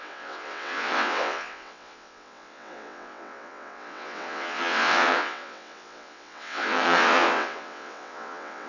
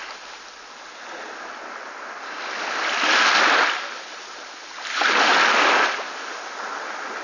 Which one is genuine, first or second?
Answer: second